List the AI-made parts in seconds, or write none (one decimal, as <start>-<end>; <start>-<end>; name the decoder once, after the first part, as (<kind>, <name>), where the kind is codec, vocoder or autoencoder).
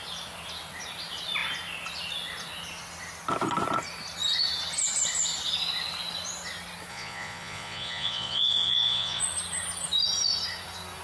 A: 6.9-9.2 (vocoder, Vocos)